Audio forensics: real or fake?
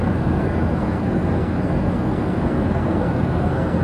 fake